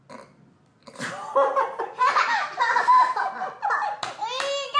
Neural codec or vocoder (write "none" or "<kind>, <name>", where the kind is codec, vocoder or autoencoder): none